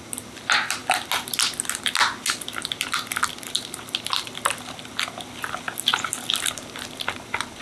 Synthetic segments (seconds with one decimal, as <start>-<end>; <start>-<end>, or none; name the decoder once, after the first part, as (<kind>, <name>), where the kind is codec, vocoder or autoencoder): none